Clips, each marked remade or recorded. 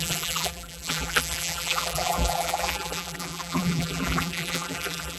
remade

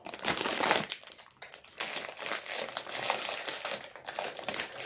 recorded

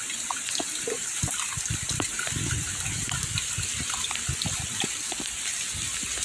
remade